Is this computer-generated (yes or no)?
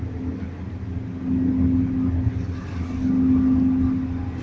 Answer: no